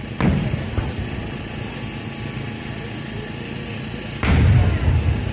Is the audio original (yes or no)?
yes